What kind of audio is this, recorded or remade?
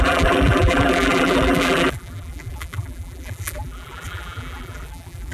remade